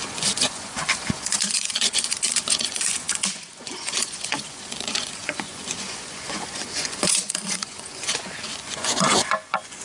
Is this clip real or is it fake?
fake